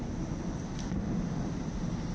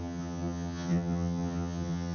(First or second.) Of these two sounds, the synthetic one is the second